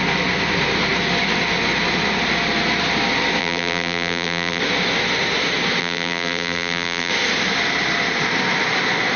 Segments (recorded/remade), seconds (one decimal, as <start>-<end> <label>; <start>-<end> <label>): 0.0-3.4 recorded; 3.4-4.6 remade; 4.6-5.8 recorded; 5.8-7.1 remade; 7.1-9.2 recorded